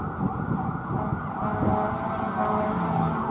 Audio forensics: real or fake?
real